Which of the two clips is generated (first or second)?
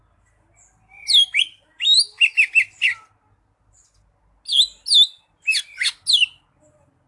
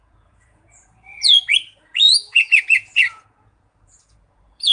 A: second